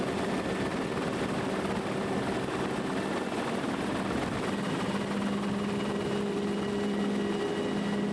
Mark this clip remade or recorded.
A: recorded